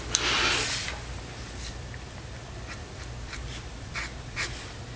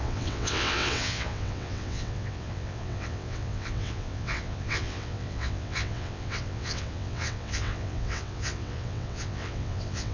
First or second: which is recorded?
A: first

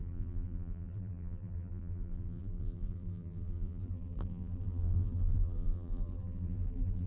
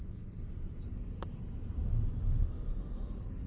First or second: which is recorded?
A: second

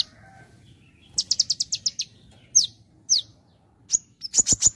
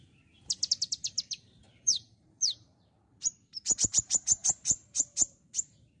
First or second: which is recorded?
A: first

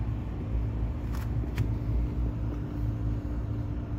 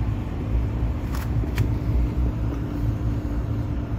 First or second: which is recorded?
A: first